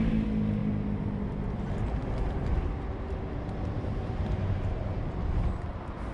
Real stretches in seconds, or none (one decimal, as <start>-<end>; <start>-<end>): 0.0-6.1